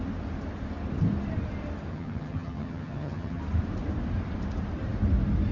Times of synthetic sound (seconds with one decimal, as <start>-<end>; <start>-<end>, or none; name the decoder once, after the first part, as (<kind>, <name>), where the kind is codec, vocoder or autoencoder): 1.9-3.4 (vocoder, HiFi-GAN)